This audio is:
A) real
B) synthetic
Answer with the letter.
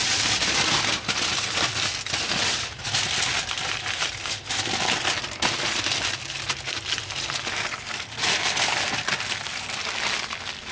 A